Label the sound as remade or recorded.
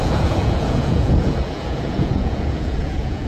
remade